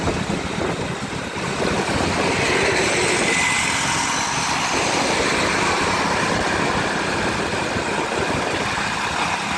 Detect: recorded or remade recorded